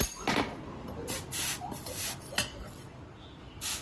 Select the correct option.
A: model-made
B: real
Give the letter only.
B